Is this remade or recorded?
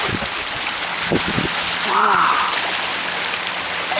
recorded